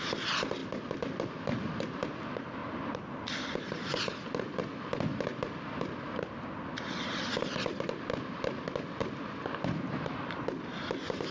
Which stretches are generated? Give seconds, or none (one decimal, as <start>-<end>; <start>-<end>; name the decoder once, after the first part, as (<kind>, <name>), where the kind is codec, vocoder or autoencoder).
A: 0.6-2.0 (vocoder, BigVGAN v2); 2.6-3.1